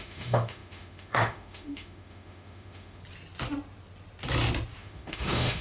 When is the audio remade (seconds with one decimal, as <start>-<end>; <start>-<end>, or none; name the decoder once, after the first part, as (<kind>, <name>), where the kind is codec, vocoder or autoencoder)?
0.0-3.0 (autoencoder, DAC-VAE); 4.8-5.6

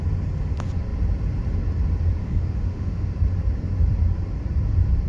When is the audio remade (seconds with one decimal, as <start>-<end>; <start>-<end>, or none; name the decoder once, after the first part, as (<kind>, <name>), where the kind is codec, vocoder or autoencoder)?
2.2-3.1 (autoencoder, DAC-VAE)

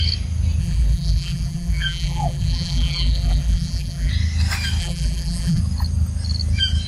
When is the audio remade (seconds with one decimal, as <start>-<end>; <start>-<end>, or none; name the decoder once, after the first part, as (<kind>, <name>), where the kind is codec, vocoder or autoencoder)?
0.6-4.1 (vocoder, BigVGAN v2); 4.8-5.6

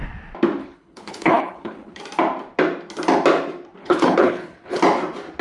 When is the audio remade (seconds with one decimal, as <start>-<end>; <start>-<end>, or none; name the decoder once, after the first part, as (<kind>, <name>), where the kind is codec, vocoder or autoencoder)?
0.6-2.0 (codec, HILCodec); 3.8-4.8

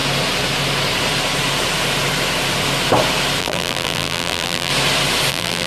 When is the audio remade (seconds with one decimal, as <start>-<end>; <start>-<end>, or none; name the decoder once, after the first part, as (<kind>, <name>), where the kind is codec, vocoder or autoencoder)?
3.4-4.7 (vocoder, BigVGAN v2); 5.3-5.7

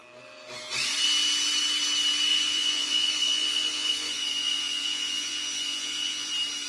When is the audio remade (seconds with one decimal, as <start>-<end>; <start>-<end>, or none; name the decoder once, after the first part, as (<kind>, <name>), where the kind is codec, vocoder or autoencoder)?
2.3-6.3 (vocoder, Vocos)

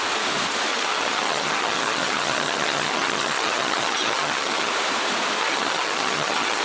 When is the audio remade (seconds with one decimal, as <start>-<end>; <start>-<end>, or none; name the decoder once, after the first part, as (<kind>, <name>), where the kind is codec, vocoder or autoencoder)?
0.7-4.7 (vocoder, HiFi-GAN); 5.4-6.6

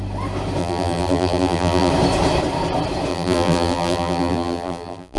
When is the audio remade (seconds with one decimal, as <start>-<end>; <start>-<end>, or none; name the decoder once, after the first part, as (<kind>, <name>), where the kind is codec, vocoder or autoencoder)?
0.6-1.9 (vocoder, BigVGAN v2); 3.1-5.2